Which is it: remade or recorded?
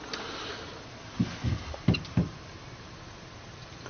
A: recorded